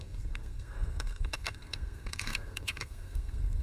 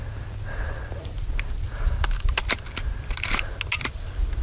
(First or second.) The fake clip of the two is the first